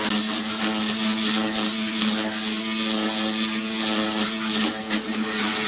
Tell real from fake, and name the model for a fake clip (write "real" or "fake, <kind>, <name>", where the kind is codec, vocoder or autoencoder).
real